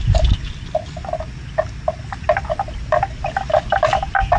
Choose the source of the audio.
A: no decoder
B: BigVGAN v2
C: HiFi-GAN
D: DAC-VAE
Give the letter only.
A